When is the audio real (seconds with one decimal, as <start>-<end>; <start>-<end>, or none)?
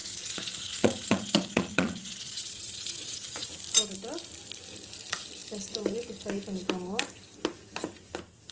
3.5-8.5